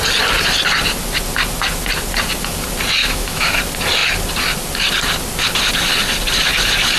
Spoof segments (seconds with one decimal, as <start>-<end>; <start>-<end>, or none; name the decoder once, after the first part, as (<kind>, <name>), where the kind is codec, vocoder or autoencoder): 3.0-3.6 (autoencoder, DAC-VAE)